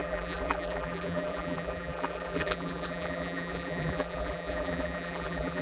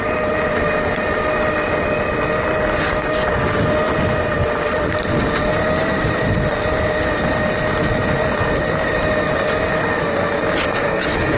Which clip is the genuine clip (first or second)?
second